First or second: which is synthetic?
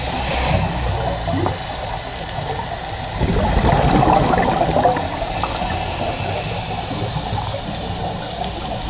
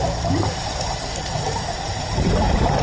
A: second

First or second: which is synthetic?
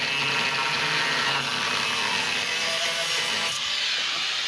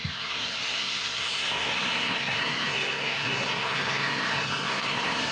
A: second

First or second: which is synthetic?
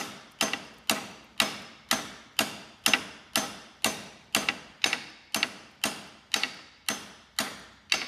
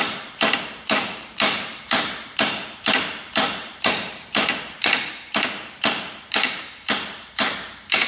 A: second